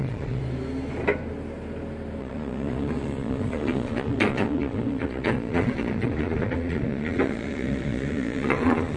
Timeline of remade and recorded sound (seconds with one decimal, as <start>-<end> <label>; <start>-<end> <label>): 0.0-0.4 remade; 0.4-2.2 recorded; 2.2-9.0 remade